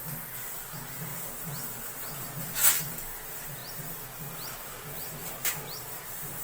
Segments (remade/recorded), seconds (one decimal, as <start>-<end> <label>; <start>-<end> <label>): 0.0-1.1 recorded; 1.1-2.0 remade; 2.0-6.4 recorded